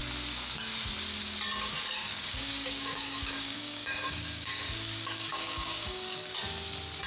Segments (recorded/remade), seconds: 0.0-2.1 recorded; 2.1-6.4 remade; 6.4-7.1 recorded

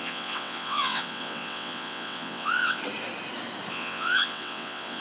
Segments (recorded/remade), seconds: 0.0-2.8 remade; 2.8-3.7 recorded; 3.7-5.0 remade

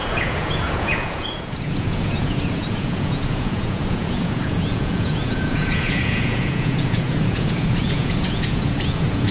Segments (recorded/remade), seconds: 0.0-9.3 remade

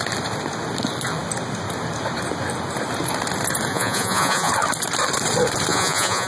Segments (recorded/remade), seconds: 0.0-3.7 recorded; 3.7-4.5 remade; 4.5-5.7 recorded; 5.7-6.3 remade

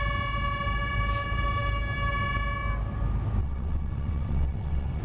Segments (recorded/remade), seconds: 0.0-3.4 recorded; 3.4-5.0 remade

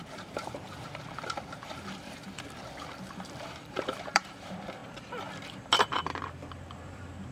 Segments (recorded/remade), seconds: 0.0-2.2 remade; 2.2-3.0 recorded; 3.0-4.8 remade; 4.8-5.4 recorded; 5.4-7.3 remade

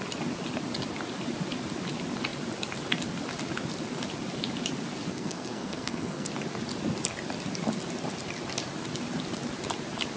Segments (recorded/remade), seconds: 0.0-5.1 recorded; 5.1-6.3 remade; 6.3-10.2 recorded